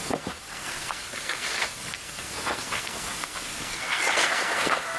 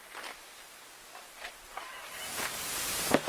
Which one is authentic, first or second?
second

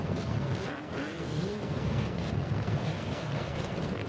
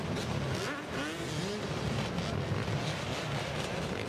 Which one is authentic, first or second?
second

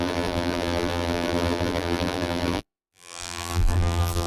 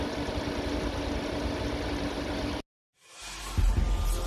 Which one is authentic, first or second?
second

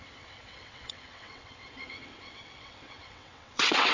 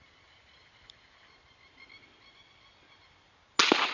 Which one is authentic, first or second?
second